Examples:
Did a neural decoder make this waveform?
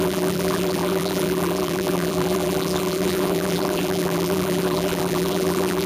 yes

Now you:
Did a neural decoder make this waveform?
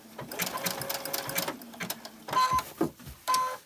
no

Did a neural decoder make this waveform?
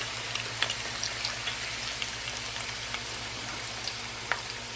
no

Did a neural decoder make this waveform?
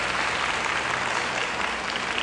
no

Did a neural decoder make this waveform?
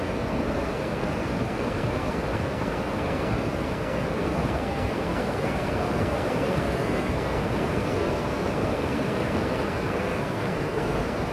yes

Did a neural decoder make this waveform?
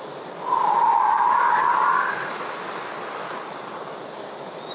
no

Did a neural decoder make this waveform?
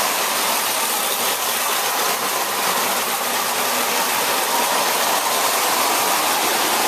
yes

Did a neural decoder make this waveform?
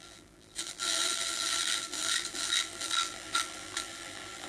yes